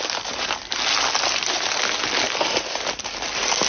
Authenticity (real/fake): real